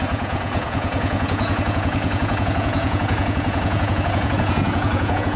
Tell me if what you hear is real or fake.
fake